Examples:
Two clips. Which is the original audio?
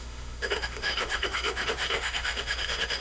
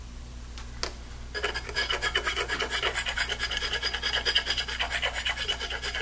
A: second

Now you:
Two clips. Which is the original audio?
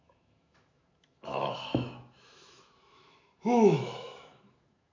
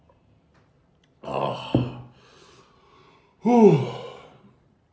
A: second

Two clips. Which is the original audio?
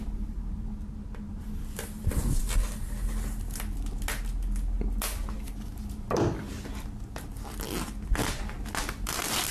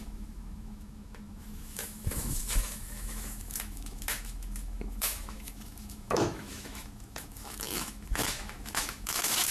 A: first